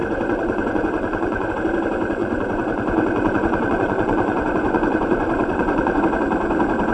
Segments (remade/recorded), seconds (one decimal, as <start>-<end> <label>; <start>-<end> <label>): 0.0-1.5 remade; 1.5-2.2 recorded; 2.2-6.0 remade; 6.0-6.9 recorded